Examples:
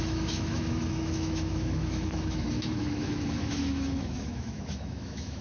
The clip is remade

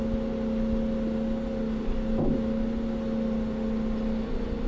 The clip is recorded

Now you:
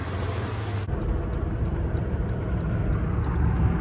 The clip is recorded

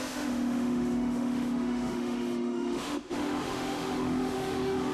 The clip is remade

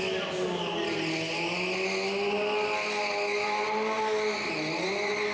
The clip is recorded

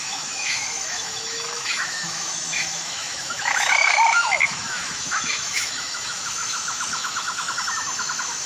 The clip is remade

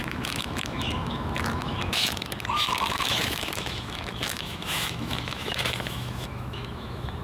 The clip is remade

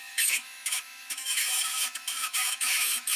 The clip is remade